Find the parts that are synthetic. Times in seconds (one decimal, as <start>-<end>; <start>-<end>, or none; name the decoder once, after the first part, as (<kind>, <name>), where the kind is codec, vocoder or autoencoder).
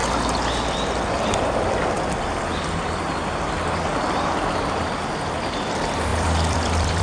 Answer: 4.2-7.0 (vocoder, BigVGAN v2)